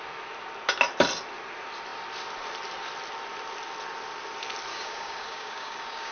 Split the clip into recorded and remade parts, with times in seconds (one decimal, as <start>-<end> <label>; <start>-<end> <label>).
0.0-4.7 recorded; 4.7-6.1 remade